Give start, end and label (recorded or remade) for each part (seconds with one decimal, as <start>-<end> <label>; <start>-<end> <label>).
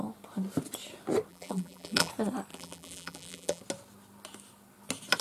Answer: 0.0-1.3 recorded; 1.3-2.1 remade; 2.1-2.5 recorded; 2.5-3.6 remade; 3.6-5.2 recorded